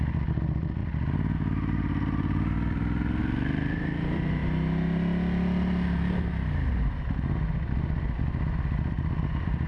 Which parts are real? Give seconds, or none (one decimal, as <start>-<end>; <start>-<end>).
4.4-8.2